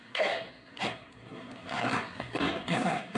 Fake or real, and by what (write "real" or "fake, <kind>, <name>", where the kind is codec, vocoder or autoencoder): fake, codec, SNAC